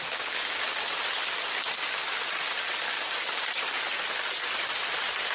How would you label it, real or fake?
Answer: real